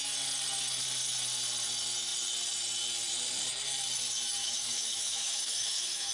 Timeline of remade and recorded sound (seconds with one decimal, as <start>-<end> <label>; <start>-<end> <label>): 0.0-4.4 recorded; 4.4-6.1 remade